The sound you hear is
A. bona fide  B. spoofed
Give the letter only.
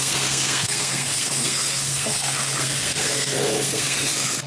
B